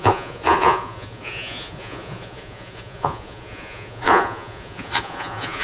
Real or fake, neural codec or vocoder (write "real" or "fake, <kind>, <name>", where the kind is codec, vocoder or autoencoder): fake, vocoder, Vocos